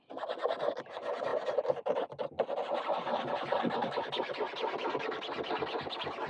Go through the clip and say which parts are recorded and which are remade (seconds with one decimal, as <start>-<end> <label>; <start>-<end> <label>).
0.0-6.3 recorded